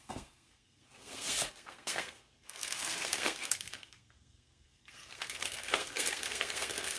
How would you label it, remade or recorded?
remade